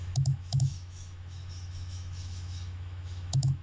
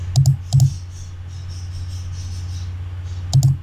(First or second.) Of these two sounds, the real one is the second